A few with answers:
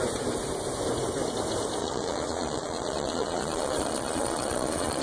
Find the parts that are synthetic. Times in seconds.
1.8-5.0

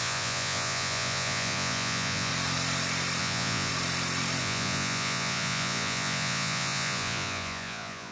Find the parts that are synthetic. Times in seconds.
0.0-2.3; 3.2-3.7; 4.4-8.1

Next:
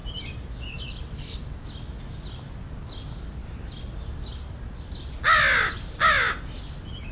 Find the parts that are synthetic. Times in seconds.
none

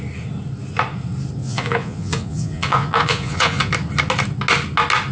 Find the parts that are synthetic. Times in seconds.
1.4-3.7

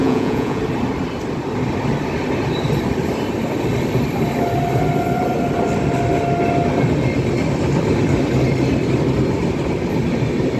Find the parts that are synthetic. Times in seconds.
0.0-0.6